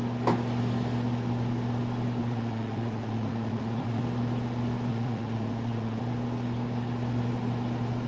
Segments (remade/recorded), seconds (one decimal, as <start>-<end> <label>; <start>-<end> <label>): 0.0-2.2 recorded; 2.2-4.0 remade; 4.0-4.9 recorded; 4.9-6.0 remade; 6.0-8.1 recorded